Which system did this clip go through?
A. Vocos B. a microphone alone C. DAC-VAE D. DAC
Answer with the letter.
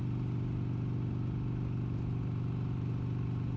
B